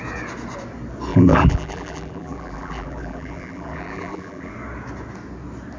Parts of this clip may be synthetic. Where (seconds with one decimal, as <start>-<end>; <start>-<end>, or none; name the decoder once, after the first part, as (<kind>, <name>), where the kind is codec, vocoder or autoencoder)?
1.1-4.5 (vocoder, BigVGAN v2)

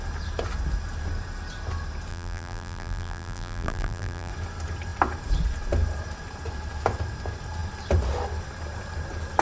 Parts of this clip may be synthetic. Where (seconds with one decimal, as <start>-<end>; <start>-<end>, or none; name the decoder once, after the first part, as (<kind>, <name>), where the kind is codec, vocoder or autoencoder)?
2.1-4.3 (vocoder, BigVGAN v2)

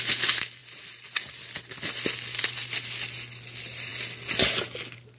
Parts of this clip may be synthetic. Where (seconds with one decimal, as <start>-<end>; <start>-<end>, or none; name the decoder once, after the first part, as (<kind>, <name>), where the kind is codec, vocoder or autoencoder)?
none

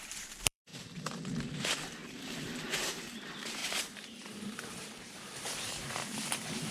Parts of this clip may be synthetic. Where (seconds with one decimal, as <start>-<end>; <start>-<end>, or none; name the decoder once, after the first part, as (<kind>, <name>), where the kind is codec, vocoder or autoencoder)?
0.0-0.7 (vocoder, BigVGAN v2); 1.5-2.0; 2.7-6.0

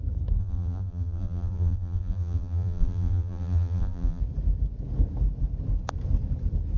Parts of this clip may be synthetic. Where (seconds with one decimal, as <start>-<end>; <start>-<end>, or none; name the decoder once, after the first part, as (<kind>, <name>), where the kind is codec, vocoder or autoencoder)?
0.4-4.2 (vocoder, BigVGAN v2)

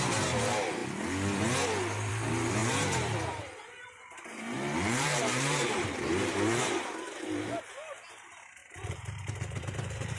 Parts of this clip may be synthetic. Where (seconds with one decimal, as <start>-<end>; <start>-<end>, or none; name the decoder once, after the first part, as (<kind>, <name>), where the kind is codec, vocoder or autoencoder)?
2.6-7.6 (vocoder, BigVGAN v2); 8.6-10.2